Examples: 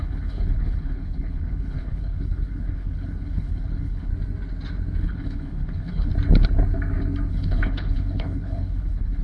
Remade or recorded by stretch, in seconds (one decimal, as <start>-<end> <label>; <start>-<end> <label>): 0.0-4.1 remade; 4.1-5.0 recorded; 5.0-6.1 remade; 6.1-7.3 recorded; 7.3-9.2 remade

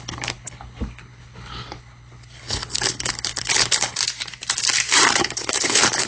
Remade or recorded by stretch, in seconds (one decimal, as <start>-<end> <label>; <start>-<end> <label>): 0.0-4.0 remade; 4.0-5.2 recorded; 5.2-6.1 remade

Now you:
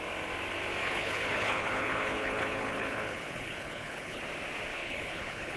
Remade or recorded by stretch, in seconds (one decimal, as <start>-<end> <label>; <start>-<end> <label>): 0.0-0.8 recorded; 0.8-4.2 remade; 4.2-4.7 recorded; 4.7-5.6 remade